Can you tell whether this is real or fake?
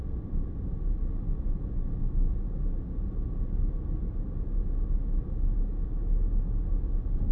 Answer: real